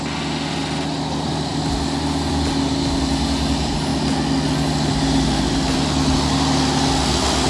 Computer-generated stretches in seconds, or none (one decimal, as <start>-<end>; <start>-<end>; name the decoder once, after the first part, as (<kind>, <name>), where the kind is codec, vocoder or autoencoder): none